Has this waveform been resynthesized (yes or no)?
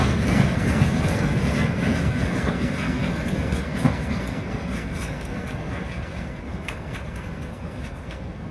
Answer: yes